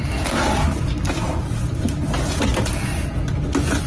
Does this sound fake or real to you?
real